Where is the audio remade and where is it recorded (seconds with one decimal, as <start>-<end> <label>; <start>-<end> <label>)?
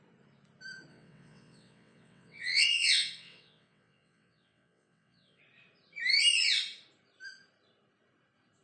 0.0-0.9 recorded; 0.9-5.4 remade; 5.4-8.6 recorded